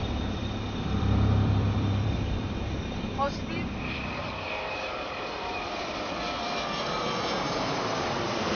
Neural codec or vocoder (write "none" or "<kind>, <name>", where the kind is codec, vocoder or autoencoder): vocoder, BigVGAN v2